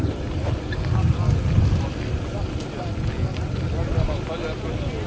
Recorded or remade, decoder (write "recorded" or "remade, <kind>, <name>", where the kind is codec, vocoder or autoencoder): recorded